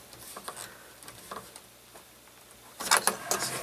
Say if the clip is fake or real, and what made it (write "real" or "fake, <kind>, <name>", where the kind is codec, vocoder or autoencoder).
real